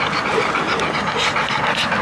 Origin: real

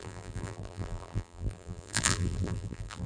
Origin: fake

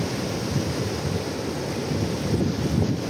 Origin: real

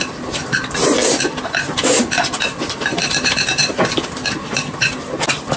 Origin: fake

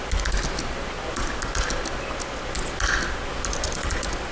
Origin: real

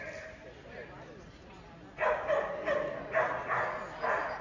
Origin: real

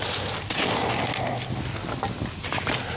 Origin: real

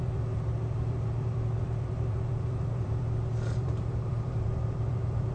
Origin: fake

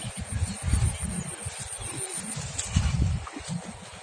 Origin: real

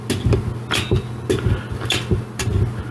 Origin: real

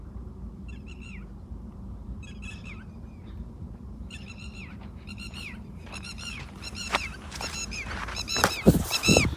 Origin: fake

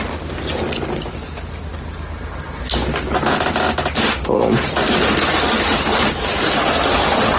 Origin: real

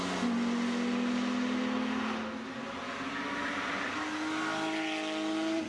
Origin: real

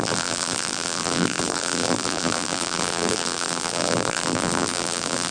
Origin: fake